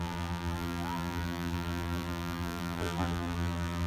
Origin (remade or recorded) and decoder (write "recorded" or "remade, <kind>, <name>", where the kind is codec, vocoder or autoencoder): remade, vocoder, BigVGAN v2